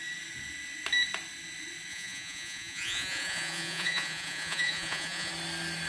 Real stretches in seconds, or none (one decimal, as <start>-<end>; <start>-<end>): 0.0-1.9; 5.3-5.9